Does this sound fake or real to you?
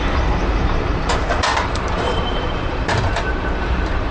fake